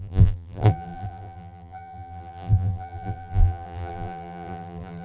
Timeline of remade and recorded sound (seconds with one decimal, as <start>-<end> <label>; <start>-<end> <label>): 0.0-5.0 remade